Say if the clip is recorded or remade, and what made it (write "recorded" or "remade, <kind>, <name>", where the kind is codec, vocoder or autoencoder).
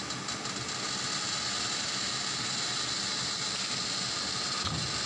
recorded